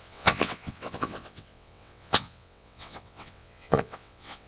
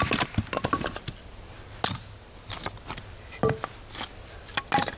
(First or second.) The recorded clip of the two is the second